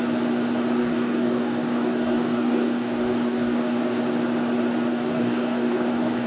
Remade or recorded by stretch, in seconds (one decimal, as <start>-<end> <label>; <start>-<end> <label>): 0.0-0.8 recorded; 0.8-4.0 remade; 4.0-4.9 recorded; 4.9-6.3 remade